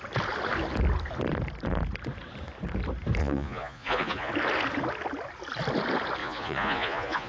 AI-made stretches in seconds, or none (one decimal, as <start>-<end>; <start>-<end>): 3.2-4.3; 6.2-7.3